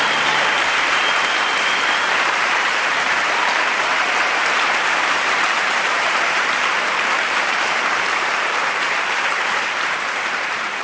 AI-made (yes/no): yes